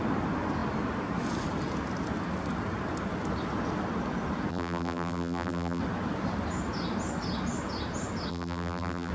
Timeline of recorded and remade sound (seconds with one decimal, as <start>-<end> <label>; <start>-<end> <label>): 0.0-4.5 recorded; 4.5-5.8 remade; 5.8-8.3 recorded; 8.3-9.1 remade